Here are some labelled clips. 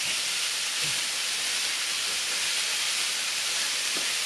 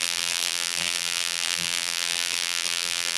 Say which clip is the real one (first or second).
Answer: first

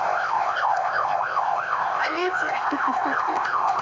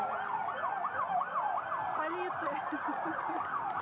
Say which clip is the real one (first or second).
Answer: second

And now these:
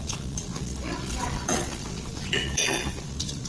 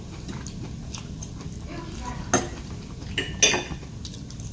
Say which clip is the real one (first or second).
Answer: second